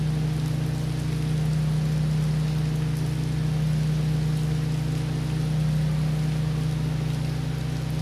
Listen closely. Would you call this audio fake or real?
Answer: real